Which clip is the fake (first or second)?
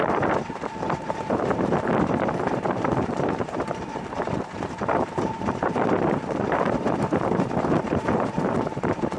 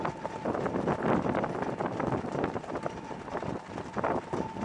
first